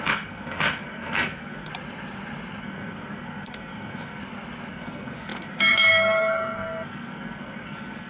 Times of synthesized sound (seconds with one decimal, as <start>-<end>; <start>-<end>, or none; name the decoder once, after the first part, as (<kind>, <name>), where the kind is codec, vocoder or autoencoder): 0.0-1.7 (codec, SNAC); 2.6-4.2; 4.7-8.1